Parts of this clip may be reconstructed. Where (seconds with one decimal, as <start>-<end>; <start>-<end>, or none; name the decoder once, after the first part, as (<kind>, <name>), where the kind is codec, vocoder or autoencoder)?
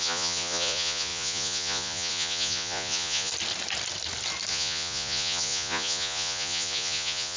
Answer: 0.0-3.3 (vocoder, Vocos); 4.5-7.4